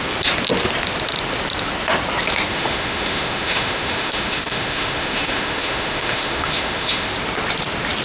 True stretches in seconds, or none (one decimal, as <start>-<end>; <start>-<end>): 0.0-2.5; 7.1-8.0